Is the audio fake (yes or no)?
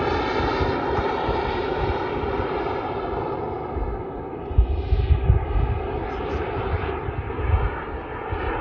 no